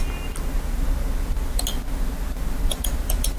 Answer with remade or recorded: recorded